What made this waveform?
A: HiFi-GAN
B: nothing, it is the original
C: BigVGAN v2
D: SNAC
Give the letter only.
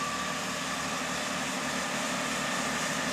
B